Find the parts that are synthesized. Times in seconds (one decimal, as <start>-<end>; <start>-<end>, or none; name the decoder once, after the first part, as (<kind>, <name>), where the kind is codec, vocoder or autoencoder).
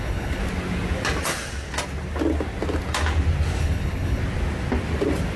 0.0-0.4 (codec, HILCodec); 3.6-4.2